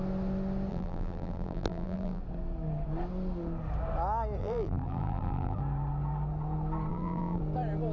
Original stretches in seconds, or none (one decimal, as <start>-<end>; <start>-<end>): 0.0-0.7; 2.2-4.4; 5.6-6.9; 7.4-7.9

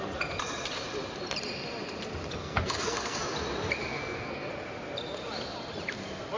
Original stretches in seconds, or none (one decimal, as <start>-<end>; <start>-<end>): 0.0-2.4; 3.2-3.9; 4.5-6.4

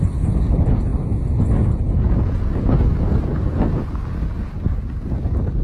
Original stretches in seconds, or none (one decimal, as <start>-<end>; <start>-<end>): 0.0-5.6